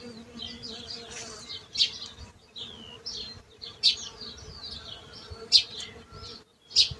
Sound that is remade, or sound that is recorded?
recorded